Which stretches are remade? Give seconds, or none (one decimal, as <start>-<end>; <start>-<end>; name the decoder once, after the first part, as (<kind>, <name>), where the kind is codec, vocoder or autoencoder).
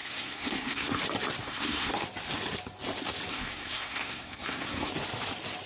0.0-1.0 (codec, SNAC); 1.4-1.9; 3.3-4.9